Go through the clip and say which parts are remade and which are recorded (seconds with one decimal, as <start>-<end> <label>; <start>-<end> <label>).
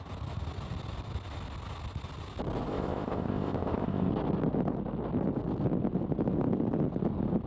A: 0.0-2.7 recorded; 2.7-4.1 remade; 4.1-7.5 recorded